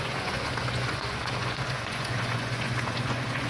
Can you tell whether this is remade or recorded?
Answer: remade